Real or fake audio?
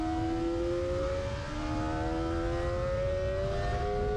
real